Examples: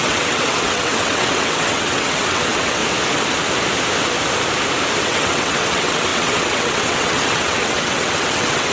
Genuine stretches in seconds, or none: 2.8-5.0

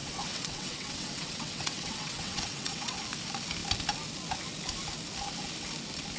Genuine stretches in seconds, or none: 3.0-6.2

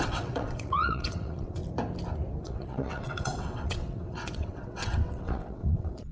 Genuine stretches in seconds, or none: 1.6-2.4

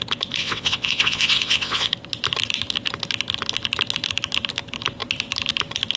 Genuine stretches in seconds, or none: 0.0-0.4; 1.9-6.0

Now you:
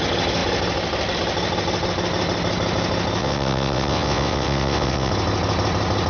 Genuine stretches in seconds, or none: 0.0-3.2; 5.1-6.1

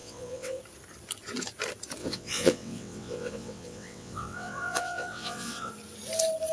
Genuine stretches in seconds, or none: 0.6-2.0; 5.7-6.5